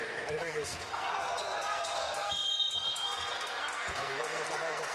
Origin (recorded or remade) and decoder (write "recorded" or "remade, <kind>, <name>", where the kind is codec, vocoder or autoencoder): remade, codec, SNAC